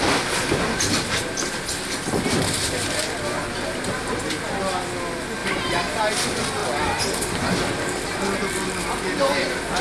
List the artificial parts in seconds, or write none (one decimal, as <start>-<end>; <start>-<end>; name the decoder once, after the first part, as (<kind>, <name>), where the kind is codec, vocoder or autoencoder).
none

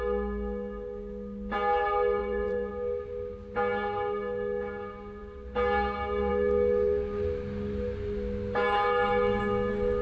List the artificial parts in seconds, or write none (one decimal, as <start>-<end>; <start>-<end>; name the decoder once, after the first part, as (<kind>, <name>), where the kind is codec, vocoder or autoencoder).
2.2-2.7 (vocoder, BigVGAN v2)